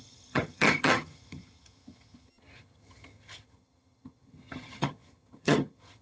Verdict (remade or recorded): remade